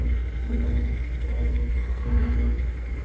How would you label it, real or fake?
fake